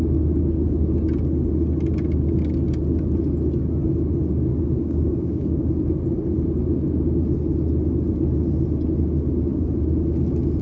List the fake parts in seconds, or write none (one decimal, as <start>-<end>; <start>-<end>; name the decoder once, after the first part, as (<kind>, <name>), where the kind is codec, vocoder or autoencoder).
4.5-5.8 (codec, DAC)